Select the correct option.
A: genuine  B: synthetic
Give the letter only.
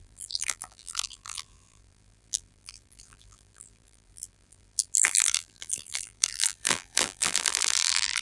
B